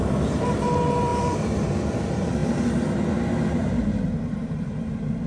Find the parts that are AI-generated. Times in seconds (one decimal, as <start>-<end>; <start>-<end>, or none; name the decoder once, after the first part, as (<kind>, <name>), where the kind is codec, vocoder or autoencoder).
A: 0.0-2.4 (vocoder, BigVGAN v2); 3.5-5.3